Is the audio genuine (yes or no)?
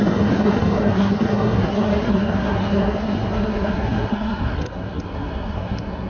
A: no